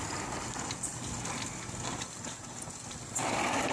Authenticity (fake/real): fake